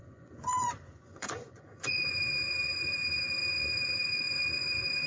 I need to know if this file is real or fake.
fake